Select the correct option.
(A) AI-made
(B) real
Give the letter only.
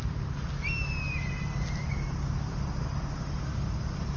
B